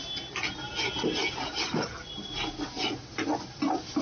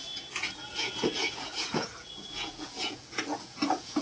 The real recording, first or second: first